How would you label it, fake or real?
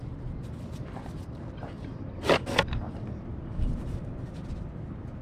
real